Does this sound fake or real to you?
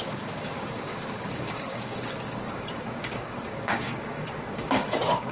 fake